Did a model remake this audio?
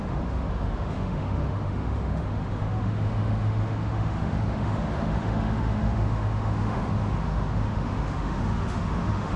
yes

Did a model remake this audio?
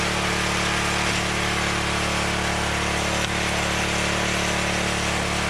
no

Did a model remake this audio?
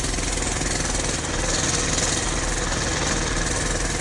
no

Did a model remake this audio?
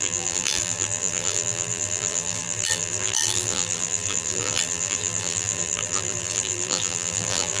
yes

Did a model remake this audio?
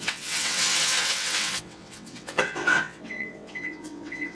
yes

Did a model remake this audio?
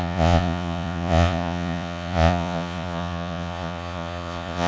yes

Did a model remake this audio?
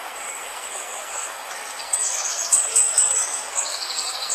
yes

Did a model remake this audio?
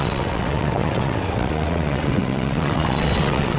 yes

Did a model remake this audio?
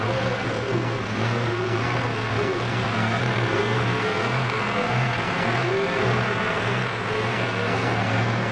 yes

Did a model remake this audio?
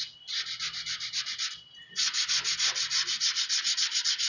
no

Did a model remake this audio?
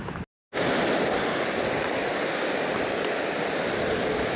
no